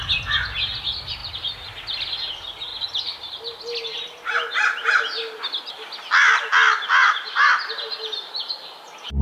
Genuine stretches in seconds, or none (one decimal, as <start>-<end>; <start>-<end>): 0.0-2.7; 3.6-9.2